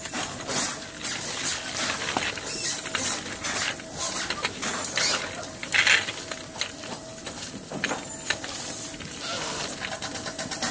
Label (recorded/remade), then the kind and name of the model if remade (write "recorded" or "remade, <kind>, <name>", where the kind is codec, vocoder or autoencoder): recorded